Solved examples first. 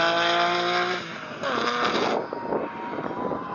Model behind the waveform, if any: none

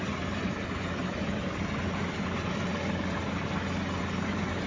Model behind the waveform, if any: none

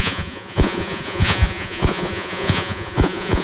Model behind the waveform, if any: vocoder, Vocos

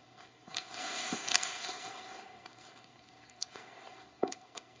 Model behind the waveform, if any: codec, SNAC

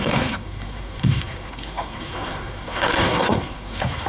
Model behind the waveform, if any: codec, SNAC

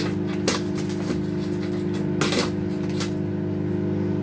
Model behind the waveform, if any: none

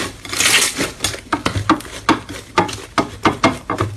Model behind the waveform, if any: none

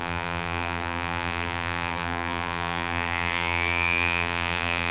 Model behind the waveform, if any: vocoder, BigVGAN v2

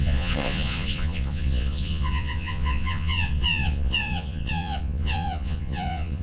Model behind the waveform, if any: vocoder, Vocos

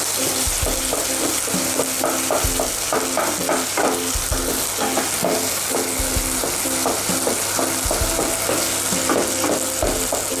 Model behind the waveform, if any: none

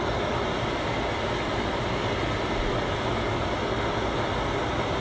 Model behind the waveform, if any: none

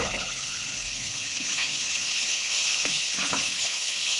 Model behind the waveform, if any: codec, HILCodec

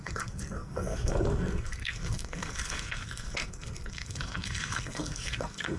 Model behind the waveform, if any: codec, SNAC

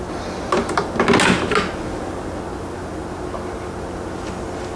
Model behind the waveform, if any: none